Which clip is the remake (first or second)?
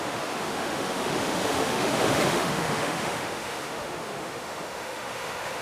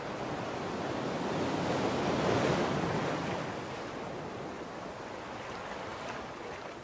first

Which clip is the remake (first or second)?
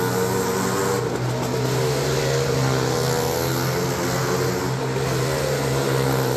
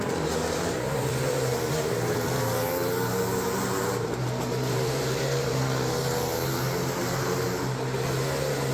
second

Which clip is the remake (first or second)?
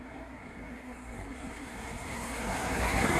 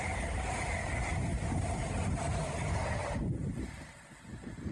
first